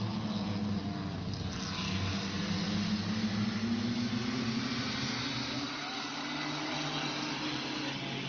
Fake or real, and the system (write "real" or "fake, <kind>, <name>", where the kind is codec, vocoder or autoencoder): real